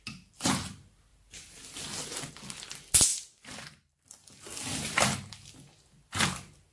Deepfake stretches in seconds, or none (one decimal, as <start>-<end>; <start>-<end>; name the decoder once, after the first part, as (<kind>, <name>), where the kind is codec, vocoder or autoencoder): none